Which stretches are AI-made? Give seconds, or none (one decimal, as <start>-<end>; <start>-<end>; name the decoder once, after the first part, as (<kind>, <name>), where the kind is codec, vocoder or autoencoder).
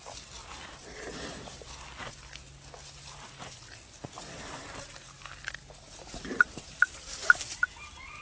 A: 0.4-1.7 (vocoder, BigVGAN v2); 5.6-7.4